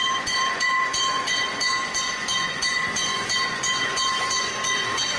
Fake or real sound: fake